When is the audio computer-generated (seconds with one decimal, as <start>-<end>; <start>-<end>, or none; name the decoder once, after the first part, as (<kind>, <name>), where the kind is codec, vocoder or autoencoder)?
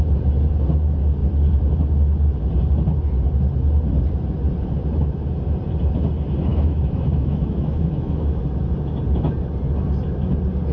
6.5-8.4 (autoencoder, DAC-VAE)